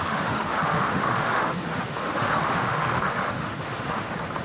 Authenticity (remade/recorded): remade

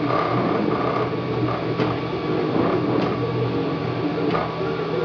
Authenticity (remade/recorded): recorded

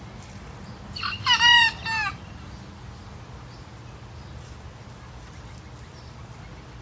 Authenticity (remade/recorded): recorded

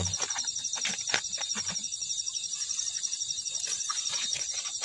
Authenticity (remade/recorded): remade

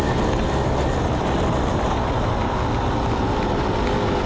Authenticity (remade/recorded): recorded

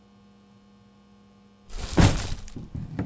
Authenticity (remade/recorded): remade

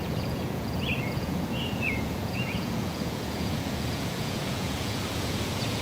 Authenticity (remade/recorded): remade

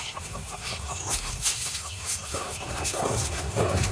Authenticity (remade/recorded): remade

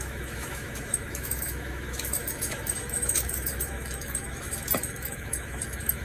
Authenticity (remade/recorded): remade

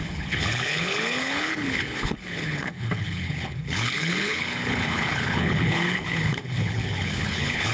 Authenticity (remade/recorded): remade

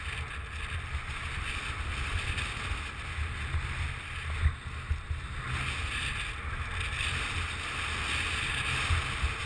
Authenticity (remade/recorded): recorded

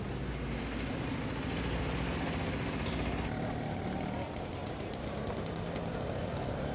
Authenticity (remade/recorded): recorded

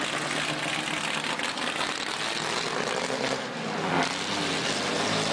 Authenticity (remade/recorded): recorded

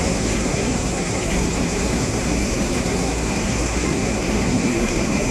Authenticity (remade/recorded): remade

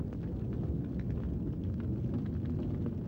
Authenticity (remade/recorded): recorded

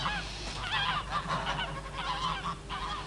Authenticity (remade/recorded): recorded